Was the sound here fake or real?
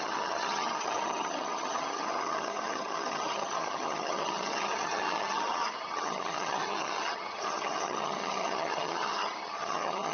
fake